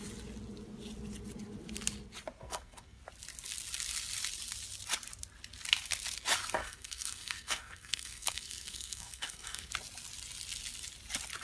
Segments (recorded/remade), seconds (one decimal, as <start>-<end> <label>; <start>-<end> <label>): 0.0-2.4 recorded; 2.4-3.0 remade; 3.0-6.6 recorded; 6.6-9.7 remade; 9.7-11.4 recorded